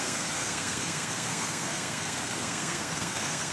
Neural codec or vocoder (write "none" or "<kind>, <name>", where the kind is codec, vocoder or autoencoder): codec, SNAC